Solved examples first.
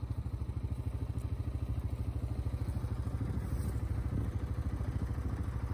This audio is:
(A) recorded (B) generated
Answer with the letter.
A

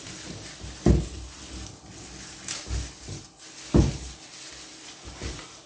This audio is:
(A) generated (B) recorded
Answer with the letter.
B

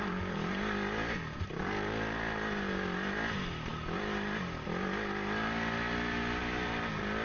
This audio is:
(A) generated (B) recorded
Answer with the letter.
B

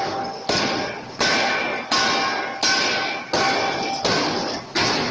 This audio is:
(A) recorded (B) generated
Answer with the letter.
A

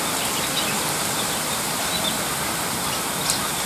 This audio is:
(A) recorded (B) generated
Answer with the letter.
A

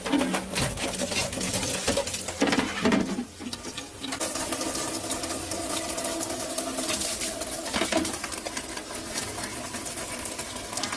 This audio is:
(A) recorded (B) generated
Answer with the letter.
A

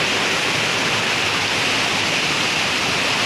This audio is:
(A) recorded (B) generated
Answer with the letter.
A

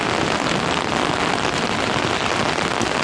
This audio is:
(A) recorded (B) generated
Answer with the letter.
A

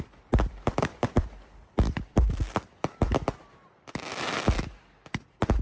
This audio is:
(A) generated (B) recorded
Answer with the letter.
B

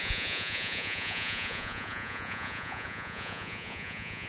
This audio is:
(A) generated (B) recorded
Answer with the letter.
A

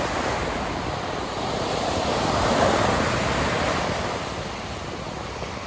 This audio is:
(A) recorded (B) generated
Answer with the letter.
A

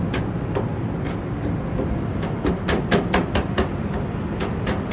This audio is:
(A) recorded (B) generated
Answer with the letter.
A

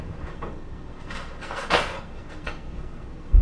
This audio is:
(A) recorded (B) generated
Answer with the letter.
B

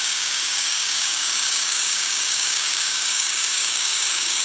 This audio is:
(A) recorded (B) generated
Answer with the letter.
B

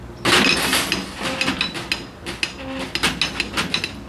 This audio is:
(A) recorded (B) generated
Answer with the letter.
A